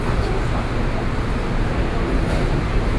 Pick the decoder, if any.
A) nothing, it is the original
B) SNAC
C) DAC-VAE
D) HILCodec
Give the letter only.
A